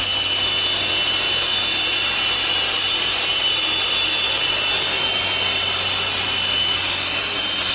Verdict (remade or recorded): recorded